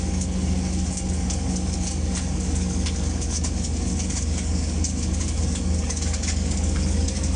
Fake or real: fake